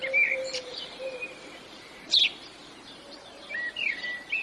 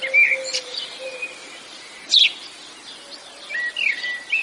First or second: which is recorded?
second